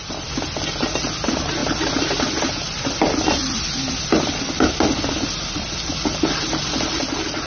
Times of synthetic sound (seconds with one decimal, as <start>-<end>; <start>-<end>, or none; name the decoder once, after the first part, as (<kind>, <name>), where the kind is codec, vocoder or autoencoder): none